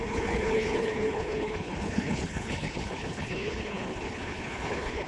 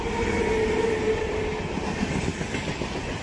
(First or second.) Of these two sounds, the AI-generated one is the first